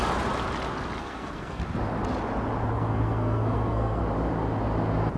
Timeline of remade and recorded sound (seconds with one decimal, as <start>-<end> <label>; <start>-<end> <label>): 0.0-1.0 recorded; 1.0-1.6 remade; 1.6-2.7 recorded; 2.7-4.0 remade; 4.0-5.2 recorded